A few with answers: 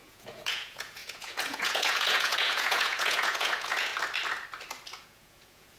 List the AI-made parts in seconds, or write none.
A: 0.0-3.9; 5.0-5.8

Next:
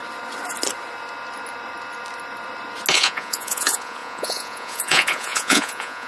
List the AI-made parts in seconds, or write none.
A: 2.9-6.1